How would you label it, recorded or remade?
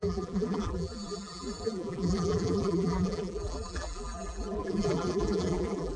remade